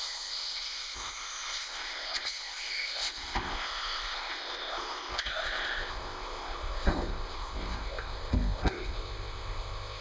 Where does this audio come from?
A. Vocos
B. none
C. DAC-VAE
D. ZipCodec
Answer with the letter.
D